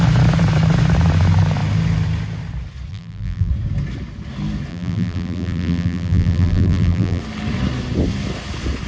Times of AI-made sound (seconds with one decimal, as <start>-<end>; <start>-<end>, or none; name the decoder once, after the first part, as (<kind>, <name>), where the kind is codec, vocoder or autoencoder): 2.9-3.5 (vocoder, BigVGAN v2); 4.7-7.2